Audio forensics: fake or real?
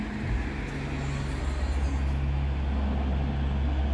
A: real